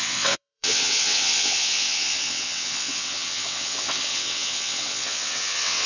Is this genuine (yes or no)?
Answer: no